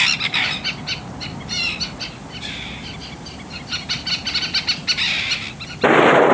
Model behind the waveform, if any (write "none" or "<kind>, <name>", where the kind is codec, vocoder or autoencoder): none